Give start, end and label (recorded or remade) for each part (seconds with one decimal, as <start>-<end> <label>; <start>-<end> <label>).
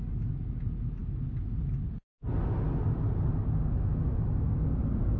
0.0-5.2 recorded